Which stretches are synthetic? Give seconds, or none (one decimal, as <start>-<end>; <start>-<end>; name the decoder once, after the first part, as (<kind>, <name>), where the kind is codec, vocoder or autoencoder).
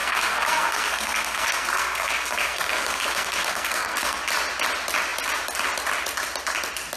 0.0-4.2 (codec, SNAC)